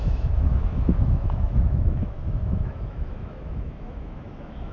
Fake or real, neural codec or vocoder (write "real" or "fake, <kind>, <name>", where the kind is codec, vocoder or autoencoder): fake, autoencoder, DAC-VAE